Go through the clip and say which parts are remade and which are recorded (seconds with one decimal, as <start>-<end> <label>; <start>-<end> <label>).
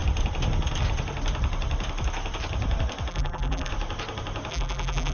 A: 0.0-3.1 recorded; 3.1-3.7 remade; 3.7-4.5 recorded; 4.5-5.1 remade